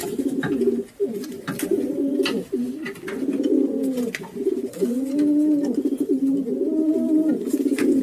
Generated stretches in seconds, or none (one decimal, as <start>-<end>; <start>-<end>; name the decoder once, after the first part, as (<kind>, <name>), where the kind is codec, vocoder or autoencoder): none